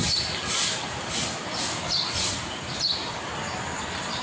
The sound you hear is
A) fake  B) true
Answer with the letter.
B